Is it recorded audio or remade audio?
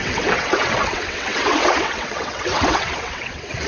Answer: remade